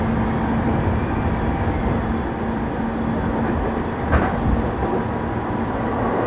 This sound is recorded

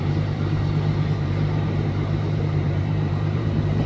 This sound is remade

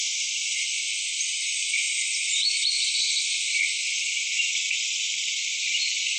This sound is remade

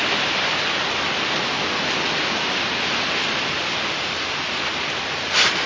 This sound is recorded